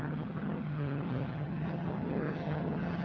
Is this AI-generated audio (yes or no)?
yes